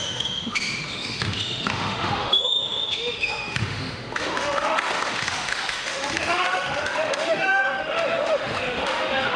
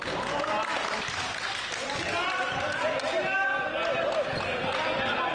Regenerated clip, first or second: first